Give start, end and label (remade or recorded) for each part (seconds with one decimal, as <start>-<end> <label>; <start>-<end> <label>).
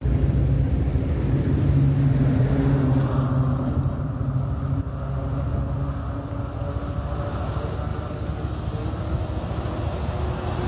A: 0.0-10.7 recorded